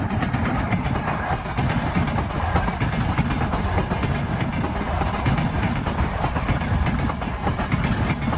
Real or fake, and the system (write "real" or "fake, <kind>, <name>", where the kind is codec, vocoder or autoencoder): real